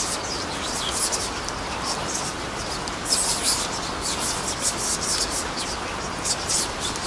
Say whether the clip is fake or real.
real